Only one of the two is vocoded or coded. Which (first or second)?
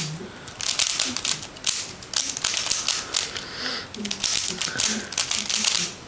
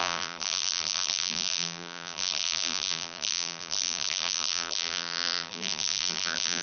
second